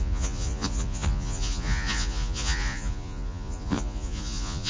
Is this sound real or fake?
fake